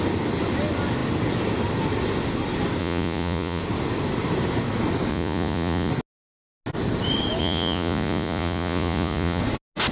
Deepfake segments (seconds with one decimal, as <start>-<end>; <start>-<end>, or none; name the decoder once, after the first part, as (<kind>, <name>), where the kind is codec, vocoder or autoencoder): 2.8-3.6 (vocoder, Vocos); 5.1-5.9; 7.4-9.4